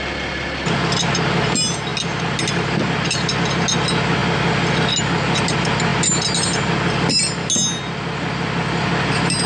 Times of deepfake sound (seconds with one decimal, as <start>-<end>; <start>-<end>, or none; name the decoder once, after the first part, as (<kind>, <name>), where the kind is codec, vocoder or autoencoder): none